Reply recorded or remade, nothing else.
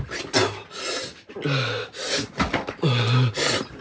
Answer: recorded